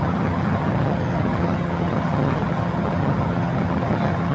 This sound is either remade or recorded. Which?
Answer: remade